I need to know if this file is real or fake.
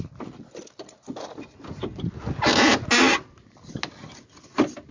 real